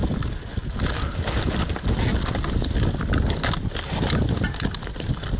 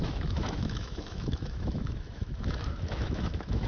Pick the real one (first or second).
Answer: first